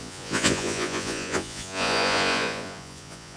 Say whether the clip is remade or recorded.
remade